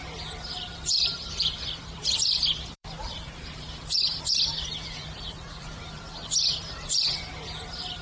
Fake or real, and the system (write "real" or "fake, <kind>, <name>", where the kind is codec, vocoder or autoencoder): fake, vocoder, BigVGAN v2